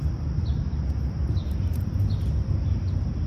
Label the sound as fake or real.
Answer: real